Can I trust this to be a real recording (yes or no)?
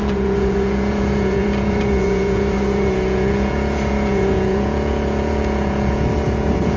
no